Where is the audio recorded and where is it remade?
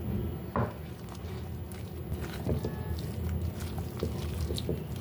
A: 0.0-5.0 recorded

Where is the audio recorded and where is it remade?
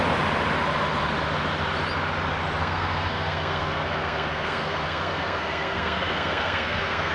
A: 0.0-2.6 recorded; 2.6-7.1 remade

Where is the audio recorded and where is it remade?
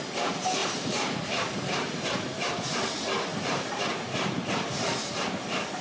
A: 0.0-0.6 recorded; 0.6-2.5 remade; 2.5-3.3 recorded; 3.3-5.8 remade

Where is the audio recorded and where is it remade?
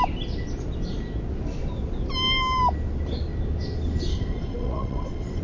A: 0.0-4.1 recorded; 4.1-5.4 remade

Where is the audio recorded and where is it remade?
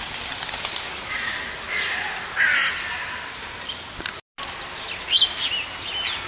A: 0.0-6.3 recorded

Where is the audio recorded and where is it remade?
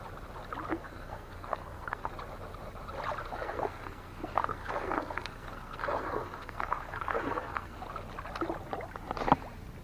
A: 0.0-0.7 recorded; 0.7-2.1 remade; 2.1-3.2 recorded; 3.2-7.8 remade; 7.8-9.8 recorded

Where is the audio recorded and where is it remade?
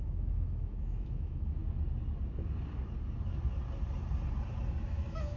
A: 0.0-1.6 remade; 1.6-4.8 recorded; 4.8-5.4 remade